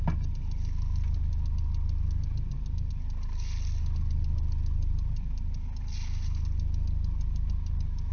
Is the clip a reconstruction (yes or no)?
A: no